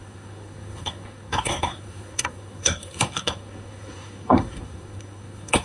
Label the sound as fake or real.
fake